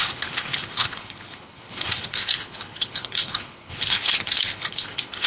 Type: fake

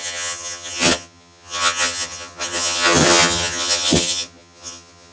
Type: fake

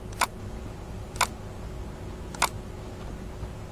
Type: real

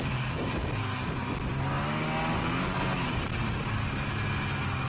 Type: real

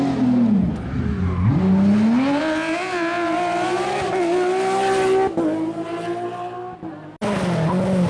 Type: real